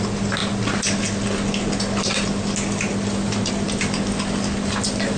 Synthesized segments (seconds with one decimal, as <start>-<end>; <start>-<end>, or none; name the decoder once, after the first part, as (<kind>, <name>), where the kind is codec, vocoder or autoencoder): none